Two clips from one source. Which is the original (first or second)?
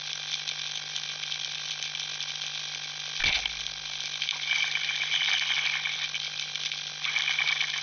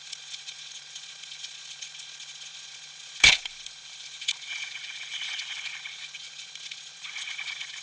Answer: first